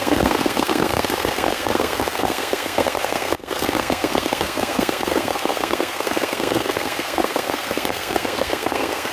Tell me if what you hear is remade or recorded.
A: remade